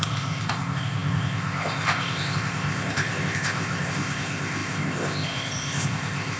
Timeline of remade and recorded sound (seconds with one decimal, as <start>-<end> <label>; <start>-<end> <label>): 0.0-6.4 remade